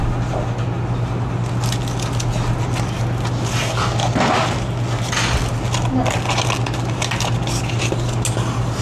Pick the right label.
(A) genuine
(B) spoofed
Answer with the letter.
A